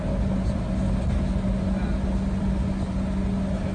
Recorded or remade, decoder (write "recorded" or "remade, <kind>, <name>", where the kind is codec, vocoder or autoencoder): recorded